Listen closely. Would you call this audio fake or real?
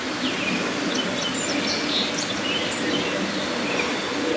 real